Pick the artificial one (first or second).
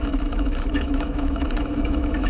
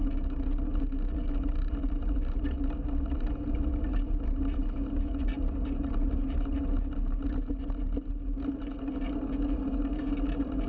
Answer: first